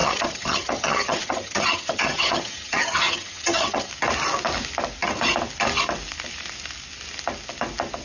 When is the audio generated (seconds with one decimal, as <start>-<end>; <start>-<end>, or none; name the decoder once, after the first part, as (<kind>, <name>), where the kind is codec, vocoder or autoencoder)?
0.0-3.9 (vocoder, HiFi-GAN)